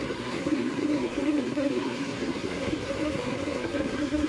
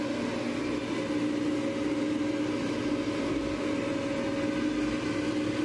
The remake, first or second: first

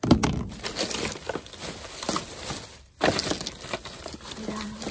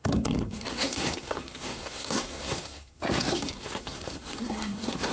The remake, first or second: second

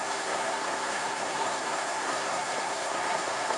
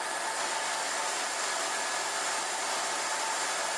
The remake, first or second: first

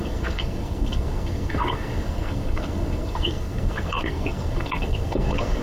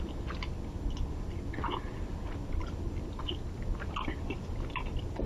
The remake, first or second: first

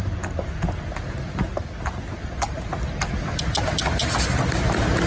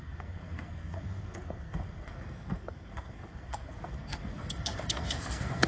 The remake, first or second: second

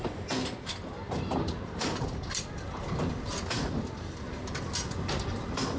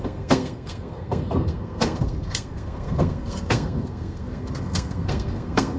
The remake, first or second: second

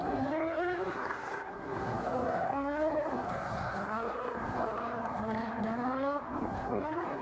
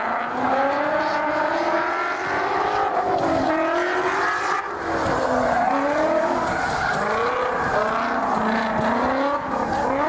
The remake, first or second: first